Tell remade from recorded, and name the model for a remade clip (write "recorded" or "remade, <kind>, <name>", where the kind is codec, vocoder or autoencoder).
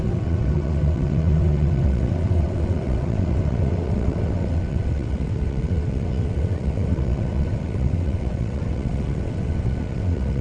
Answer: remade, vocoder, WaveNeXt